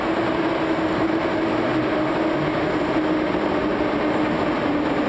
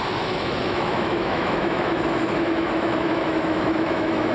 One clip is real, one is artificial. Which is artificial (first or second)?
second